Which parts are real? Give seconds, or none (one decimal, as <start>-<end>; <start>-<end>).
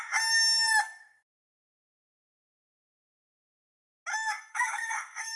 0.0-0.8; 1.6-4.1